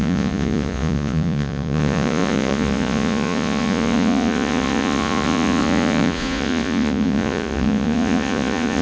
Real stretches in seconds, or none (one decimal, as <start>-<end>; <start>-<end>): none